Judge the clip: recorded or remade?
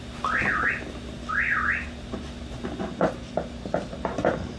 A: recorded